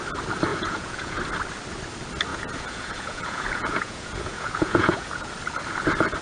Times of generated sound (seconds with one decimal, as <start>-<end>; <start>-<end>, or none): 0.5-1.2; 2.3-5.3